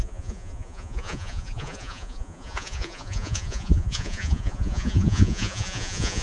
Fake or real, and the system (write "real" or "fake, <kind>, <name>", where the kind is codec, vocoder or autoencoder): fake, vocoder, Vocos